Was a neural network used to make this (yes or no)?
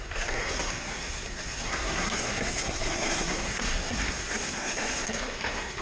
yes